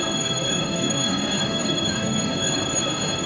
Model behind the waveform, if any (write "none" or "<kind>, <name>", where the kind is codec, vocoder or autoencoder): autoencoder, DAC-VAE